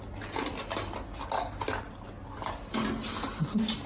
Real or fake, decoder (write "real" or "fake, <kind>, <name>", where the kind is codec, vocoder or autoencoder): real